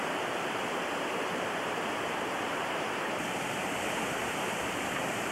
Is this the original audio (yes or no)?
no